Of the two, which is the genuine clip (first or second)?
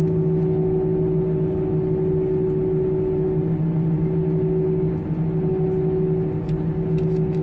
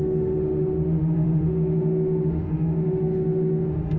first